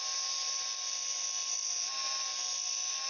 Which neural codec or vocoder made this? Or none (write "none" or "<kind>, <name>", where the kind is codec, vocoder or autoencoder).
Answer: none